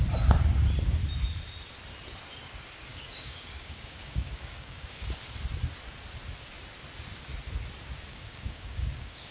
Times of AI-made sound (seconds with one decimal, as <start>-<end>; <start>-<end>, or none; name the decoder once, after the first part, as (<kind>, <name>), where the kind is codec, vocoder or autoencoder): 2.9-5.2 (codec, DAC); 8.1-9.3